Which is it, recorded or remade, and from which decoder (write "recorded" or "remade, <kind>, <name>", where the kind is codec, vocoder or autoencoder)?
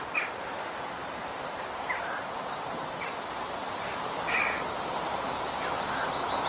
recorded